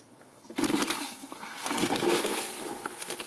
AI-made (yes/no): yes